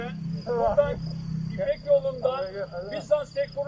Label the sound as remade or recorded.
recorded